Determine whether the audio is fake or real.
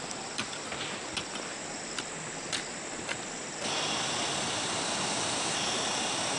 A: real